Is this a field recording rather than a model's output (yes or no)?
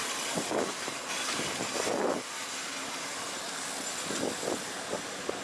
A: yes